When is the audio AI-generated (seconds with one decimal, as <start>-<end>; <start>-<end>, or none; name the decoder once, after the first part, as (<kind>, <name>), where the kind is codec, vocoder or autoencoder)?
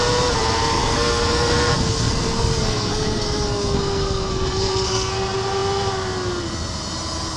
0.7-5.1 (codec, SNAC)